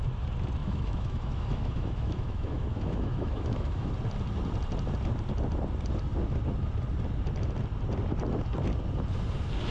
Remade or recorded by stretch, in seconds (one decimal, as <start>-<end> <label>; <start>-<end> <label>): 0.0-0.6 recorded; 0.6-3.9 remade; 3.9-9.7 recorded